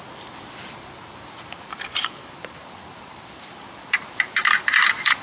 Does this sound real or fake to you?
fake